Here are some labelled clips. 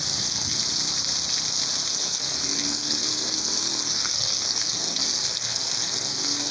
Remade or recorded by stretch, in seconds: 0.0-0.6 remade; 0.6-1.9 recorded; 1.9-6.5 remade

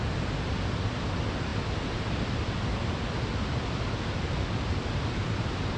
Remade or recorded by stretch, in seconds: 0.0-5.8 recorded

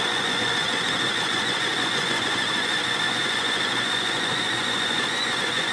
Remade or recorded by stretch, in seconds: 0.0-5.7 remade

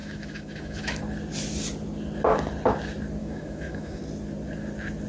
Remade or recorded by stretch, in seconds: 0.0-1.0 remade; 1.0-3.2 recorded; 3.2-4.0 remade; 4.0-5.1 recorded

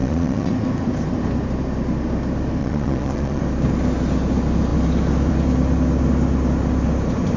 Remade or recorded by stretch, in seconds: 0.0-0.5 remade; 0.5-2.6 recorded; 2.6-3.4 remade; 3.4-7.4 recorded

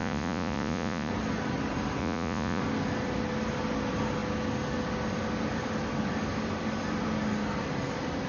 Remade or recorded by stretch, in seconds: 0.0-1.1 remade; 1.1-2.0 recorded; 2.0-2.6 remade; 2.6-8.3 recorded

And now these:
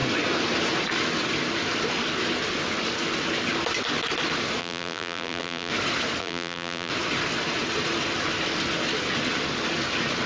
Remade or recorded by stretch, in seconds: 0.0-4.6 recorded; 4.6-5.7 remade; 5.7-6.2 recorded; 6.2-6.9 remade; 6.9-10.3 recorded